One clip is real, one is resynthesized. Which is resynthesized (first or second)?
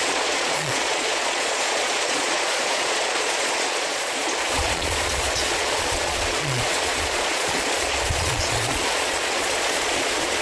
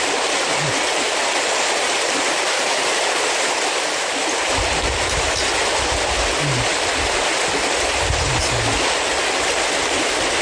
first